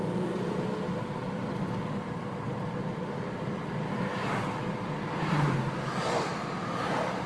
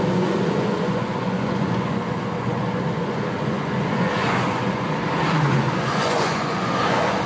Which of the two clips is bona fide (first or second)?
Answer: first